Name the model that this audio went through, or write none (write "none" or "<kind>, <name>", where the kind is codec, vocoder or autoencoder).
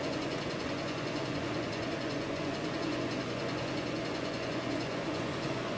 vocoder, Vocos